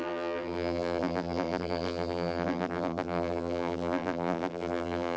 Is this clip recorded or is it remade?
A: remade